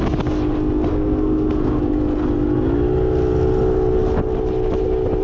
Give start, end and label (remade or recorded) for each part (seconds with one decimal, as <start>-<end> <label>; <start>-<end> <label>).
0.0-0.9 recorded; 0.9-1.8 remade; 1.8-5.2 recorded